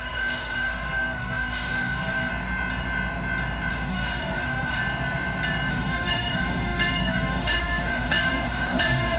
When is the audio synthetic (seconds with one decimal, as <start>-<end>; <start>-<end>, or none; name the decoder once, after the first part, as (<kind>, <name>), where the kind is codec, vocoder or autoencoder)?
0.0-2.3 (autoencoder, DAC-VAE); 3.7-4.8; 5.7-9.2

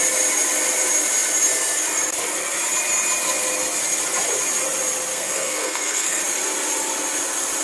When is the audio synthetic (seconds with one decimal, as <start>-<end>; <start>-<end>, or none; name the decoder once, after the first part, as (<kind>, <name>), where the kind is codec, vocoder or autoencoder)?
5.1-6.2 (codec, SNAC)

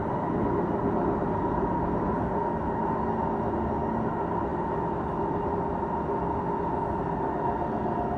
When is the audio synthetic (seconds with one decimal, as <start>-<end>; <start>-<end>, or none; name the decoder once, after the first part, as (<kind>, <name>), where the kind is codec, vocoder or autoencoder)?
none

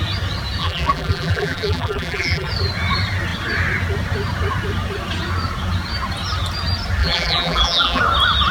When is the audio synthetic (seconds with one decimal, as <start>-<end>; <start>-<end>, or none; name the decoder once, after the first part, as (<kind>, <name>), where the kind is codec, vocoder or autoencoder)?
0.6-2.5 (vocoder, BigVGAN v2); 7.0-8.0

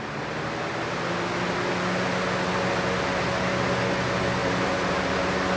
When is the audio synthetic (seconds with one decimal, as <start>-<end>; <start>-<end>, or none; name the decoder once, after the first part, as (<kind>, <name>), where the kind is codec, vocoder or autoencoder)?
4.4-5.1 (vocoder, BigVGAN v2)

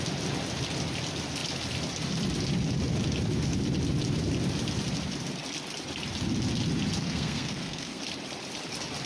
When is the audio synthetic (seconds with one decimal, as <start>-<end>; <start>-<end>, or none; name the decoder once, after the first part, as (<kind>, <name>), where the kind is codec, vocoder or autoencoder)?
7.0-8.0 (codec, SNAC)